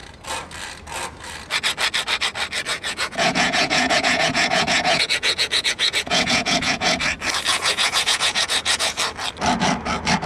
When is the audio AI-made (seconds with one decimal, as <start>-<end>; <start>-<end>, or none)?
2.7-7.0; 7.5-9.0

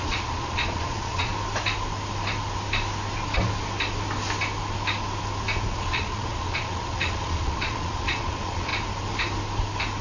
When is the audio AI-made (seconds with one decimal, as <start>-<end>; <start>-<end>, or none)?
0.0-1.3; 5.7-8.7

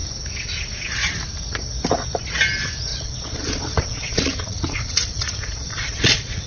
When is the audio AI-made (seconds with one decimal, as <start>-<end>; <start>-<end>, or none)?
2.9-6.5

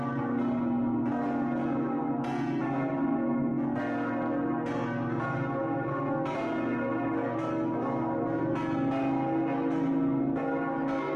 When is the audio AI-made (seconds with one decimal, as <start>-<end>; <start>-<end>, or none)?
none

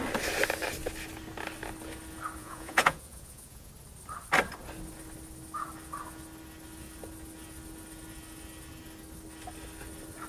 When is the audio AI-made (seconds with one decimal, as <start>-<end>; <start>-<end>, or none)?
2.4-3.7

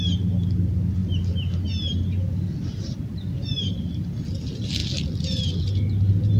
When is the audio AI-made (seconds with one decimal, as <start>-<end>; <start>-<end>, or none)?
none